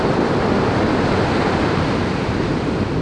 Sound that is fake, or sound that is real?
real